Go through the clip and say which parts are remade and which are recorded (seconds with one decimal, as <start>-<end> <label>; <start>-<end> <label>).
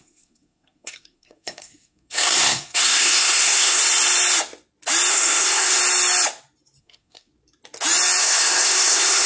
0.0-3.8 remade; 3.8-5.1 recorded; 5.1-5.8 remade; 5.8-6.8 recorded; 6.8-7.3 remade; 7.3-8.2 recorded; 8.2-9.3 remade